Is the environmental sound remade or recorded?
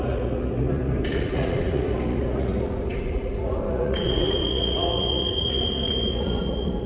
remade